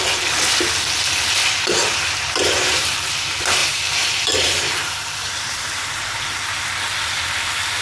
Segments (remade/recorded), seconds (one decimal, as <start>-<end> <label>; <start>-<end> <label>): 0.0-3.6 recorded; 3.6-6.2 remade; 6.2-7.8 recorded